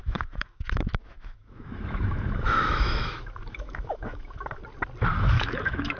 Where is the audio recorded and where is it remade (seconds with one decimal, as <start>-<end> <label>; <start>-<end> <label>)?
0.0-4.6 remade; 4.6-5.2 recorded; 5.2-6.0 remade